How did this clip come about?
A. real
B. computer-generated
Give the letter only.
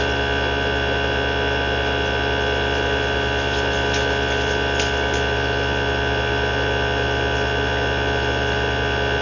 A